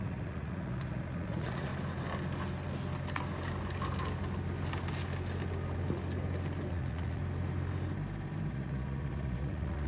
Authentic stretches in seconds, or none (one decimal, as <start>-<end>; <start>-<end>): 1.7-6.7; 7.2-8.5